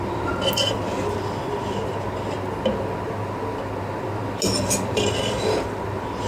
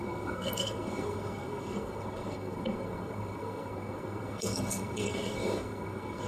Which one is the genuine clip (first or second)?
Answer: first